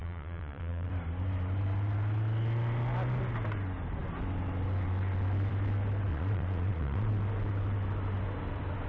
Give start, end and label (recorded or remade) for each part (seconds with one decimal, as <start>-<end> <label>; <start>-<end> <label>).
0.0-0.9 remade; 0.9-6.1 recorded; 6.1-7.1 remade; 7.1-8.9 recorded